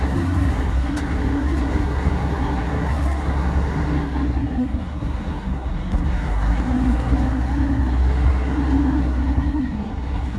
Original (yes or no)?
no